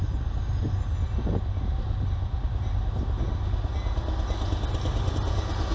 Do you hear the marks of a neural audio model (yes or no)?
no